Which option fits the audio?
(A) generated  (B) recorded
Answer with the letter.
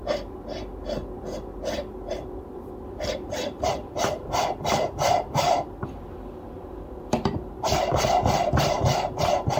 A